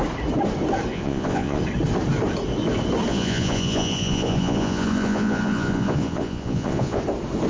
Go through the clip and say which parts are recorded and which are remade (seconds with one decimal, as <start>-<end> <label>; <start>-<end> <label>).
0.0-0.9 recorded; 0.9-1.6 remade; 1.6-3.1 recorded; 3.1-7.0 remade; 7.0-7.5 recorded